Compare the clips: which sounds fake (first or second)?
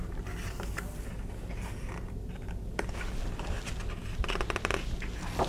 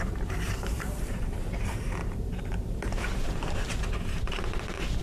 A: second